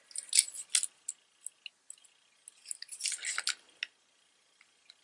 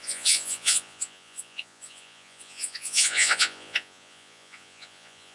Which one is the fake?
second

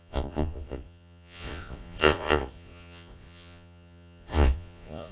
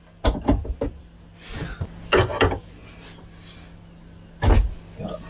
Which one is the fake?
first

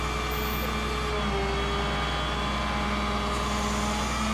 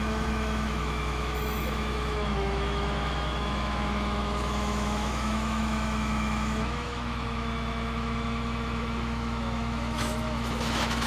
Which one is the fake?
second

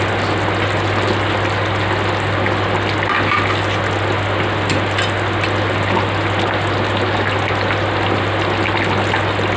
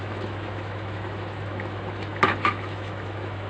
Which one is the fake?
second